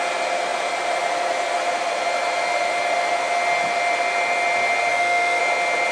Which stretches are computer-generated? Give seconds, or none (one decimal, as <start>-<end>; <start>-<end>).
4.9-5.4